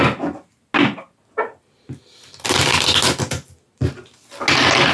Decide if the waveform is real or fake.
real